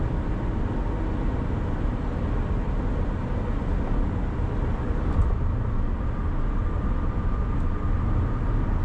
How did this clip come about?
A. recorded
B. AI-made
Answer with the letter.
A